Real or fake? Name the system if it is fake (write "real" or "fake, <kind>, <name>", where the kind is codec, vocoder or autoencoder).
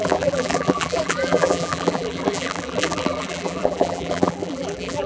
fake, vocoder, BigVGAN v2